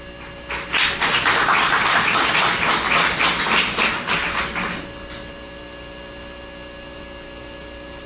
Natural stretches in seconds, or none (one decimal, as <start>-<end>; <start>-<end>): 0.0-8.1